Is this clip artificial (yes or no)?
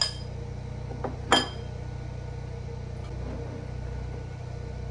no